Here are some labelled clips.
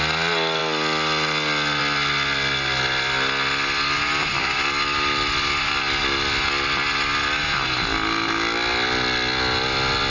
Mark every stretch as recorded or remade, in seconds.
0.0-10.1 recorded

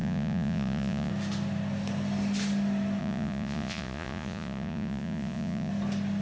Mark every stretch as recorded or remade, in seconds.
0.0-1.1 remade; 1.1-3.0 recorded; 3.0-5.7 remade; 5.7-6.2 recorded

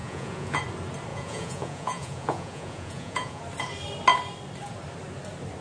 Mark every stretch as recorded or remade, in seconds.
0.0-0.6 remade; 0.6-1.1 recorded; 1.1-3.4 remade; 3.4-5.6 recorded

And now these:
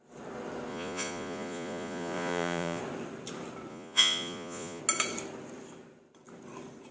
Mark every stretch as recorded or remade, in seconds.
0.0-0.7 recorded; 0.7-2.8 remade; 2.8-3.7 recorded; 3.7-4.8 remade; 4.8-6.9 recorded

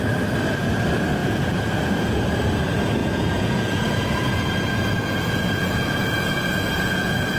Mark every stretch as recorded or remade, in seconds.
0.0-1.2 recorded; 1.2-2.2 remade; 2.2-3.0 recorded; 3.0-7.4 remade